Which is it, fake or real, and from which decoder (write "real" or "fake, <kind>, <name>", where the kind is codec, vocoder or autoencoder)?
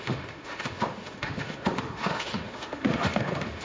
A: fake, autoencoder, DAC-VAE